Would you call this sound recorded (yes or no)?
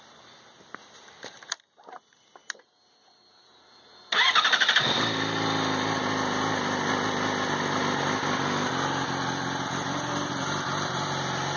yes